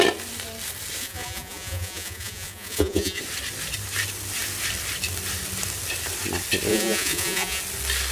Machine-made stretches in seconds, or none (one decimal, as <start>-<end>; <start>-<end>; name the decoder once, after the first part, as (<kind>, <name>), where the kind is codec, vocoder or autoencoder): 1.0-3.2 (vocoder, Vocos); 6.7-7.6